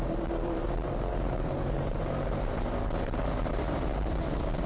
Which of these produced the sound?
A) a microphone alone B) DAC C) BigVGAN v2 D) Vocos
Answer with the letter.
C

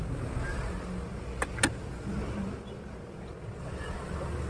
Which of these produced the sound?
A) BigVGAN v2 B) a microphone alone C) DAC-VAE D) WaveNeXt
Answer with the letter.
B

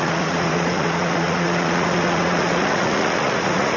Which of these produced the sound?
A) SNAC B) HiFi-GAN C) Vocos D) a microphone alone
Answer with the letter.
C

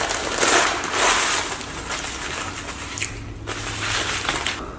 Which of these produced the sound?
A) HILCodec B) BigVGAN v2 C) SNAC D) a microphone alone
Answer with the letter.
D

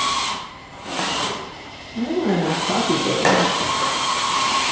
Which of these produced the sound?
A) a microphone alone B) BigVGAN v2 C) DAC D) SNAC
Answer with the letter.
B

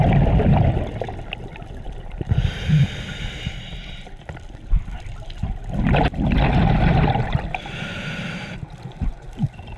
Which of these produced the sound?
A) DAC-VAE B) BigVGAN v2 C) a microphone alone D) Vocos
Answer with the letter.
C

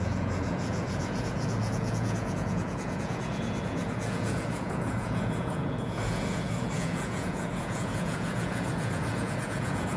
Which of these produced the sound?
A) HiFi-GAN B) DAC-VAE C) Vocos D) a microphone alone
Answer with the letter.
C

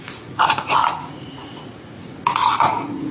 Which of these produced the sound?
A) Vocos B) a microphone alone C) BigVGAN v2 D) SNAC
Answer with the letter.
A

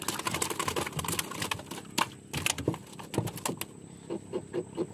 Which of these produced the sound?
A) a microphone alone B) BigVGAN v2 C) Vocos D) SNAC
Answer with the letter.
A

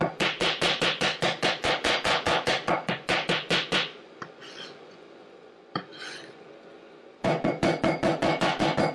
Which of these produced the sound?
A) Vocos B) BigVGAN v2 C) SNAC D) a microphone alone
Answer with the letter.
A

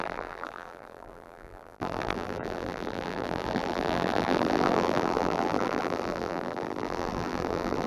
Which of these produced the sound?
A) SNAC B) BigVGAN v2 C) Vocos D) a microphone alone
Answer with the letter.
B